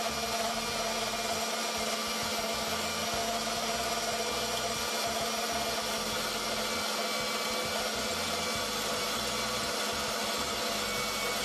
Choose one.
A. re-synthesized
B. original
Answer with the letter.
B